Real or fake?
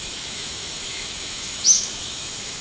fake